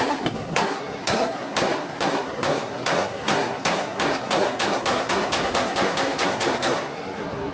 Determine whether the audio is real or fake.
fake